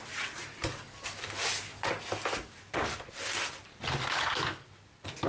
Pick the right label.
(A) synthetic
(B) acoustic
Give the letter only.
B